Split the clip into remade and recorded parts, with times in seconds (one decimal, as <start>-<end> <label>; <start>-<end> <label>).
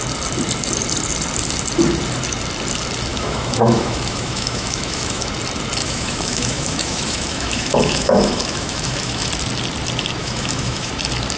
0.0-3.1 recorded; 3.1-5.3 remade; 5.3-5.8 recorded; 5.8-9.3 remade; 9.3-10.2 recorded; 10.2-10.9 remade; 10.9-11.4 recorded